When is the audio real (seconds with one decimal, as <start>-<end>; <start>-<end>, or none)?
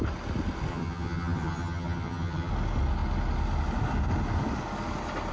0.0-0.7; 2.5-5.3